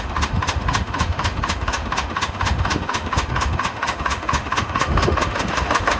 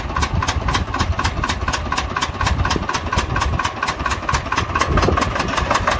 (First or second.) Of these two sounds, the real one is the second